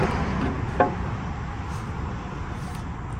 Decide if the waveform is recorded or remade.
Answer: recorded